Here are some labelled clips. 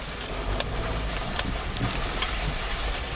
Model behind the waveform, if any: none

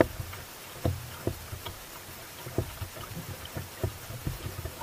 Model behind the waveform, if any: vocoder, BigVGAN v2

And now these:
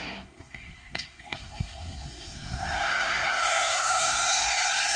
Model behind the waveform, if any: codec, SNAC